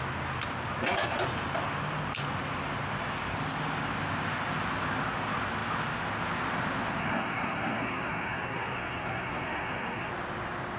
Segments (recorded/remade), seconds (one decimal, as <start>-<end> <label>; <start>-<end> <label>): 0.0-7.0 recorded; 7.0-10.1 remade; 10.1-10.8 recorded